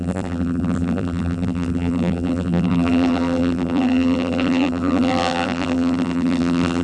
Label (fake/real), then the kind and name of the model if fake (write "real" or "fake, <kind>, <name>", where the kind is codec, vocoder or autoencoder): fake, vocoder, BigVGAN v2